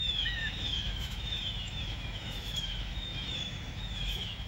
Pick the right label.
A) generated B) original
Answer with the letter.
A